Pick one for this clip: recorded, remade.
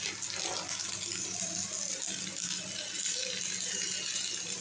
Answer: recorded